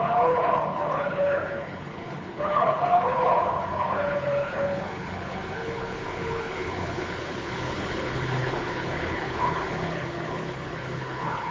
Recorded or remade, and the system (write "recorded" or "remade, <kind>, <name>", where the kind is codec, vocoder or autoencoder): remade, codec, HILCodec